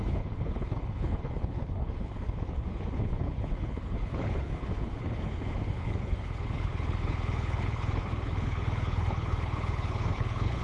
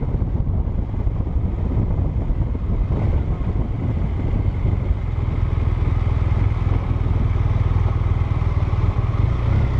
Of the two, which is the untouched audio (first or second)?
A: second